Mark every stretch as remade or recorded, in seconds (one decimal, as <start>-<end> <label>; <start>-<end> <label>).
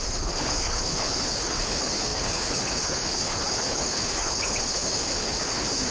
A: 0.0-5.9 remade